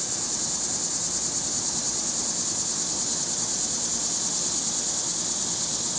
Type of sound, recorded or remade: recorded